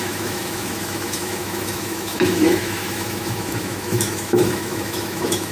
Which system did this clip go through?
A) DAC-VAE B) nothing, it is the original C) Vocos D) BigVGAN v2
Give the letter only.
A